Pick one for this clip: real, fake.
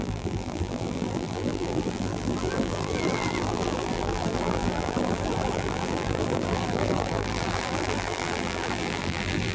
fake